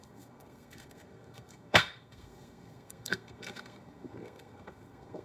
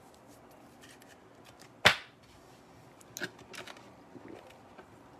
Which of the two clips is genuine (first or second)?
second